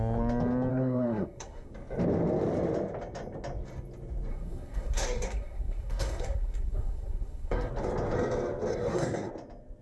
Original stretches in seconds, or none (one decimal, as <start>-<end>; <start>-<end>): 0.0-0.7; 1.7-4.3; 7.7-8.7; 9.3-9.8